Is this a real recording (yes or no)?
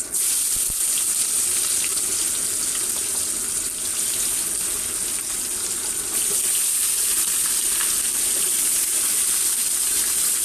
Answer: yes